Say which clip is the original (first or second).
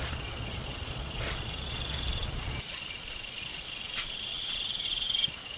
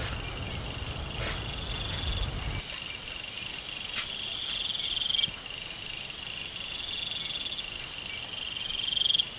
second